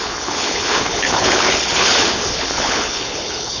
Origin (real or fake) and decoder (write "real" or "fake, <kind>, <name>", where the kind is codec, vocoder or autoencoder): fake, codec, HILCodec